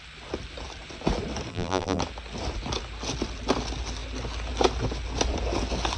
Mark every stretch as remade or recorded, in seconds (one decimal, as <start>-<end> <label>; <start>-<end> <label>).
0.0-1.5 recorded; 1.5-2.0 remade; 2.0-6.0 recorded